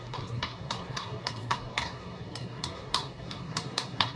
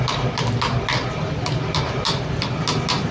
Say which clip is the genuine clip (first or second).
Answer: second